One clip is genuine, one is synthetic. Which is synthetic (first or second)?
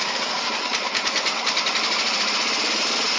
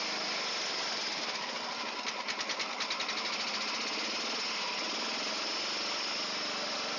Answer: first